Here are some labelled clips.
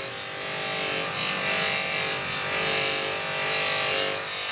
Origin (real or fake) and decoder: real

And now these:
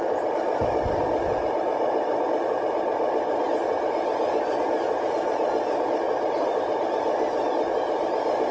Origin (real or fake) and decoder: real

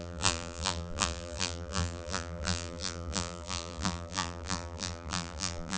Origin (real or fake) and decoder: fake, vocoder, BigVGAN v2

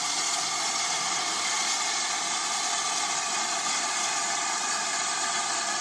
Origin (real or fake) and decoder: real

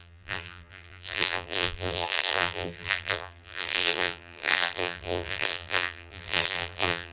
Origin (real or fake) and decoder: fake, vocoder, BigVGAN v2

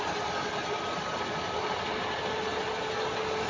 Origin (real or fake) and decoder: real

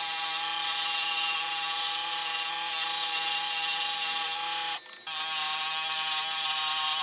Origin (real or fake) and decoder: real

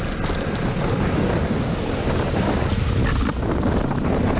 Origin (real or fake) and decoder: real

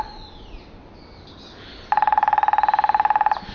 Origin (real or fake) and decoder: real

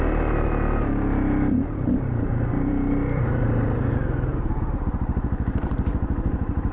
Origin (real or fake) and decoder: fake, vocoder, BigVGAN v2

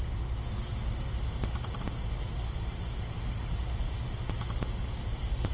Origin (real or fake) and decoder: real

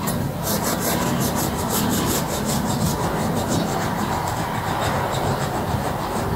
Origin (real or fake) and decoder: real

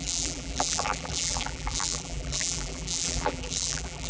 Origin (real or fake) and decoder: fake, vocoder, BigVGAN v2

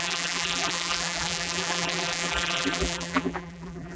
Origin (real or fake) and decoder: fake, vocoder, BigVGAN v2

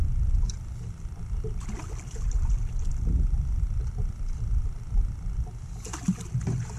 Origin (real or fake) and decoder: real